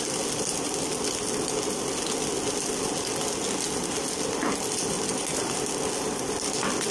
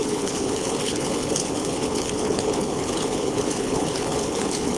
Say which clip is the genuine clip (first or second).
first